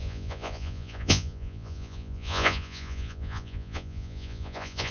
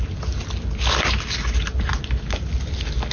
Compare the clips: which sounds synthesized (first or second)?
first